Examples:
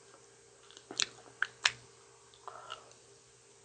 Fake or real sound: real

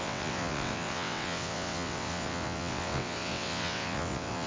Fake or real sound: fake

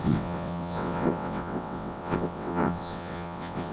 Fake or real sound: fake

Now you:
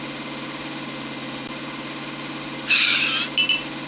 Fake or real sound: real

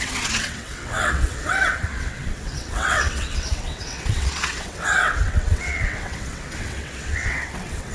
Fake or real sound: fake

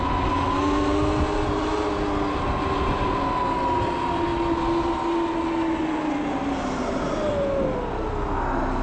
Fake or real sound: real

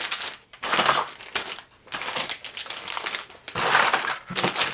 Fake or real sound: real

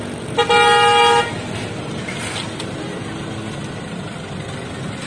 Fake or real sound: real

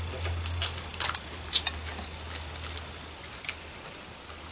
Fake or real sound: real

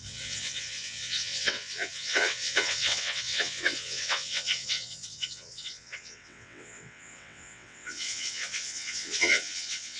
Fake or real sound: fake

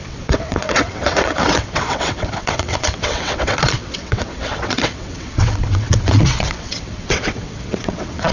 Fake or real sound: fake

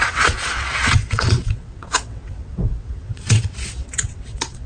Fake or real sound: fake